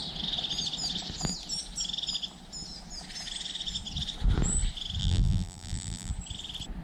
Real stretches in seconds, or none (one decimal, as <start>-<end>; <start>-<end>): 0.0-5.0; 6.1-6.8